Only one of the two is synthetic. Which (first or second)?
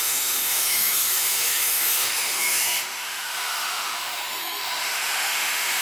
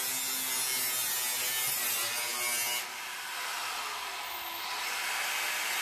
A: first